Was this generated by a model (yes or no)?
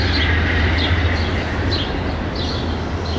no